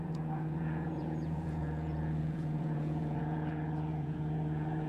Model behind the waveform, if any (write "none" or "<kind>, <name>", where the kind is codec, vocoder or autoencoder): vocoder, Vocos